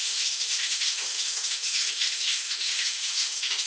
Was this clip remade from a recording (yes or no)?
yes